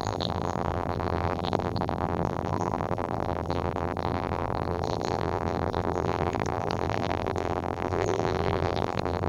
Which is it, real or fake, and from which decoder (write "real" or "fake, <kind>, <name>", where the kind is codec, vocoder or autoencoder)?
fake, vocoder, BigVGAN v2